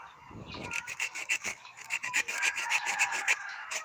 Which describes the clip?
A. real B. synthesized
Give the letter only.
B